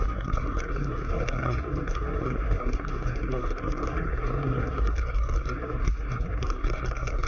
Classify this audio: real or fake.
fake